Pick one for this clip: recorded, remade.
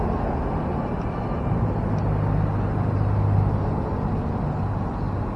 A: recorded